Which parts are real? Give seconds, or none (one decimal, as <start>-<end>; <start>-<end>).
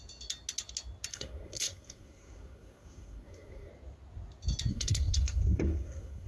0.0-1.1; 3.7-4.7